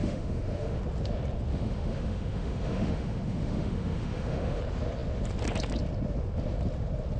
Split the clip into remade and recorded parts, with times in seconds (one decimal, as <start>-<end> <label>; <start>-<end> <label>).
0.0-0.8 remade; 0.8-1.5 recorded; 1.5-4.6 remade; 4.6-7.2 recorded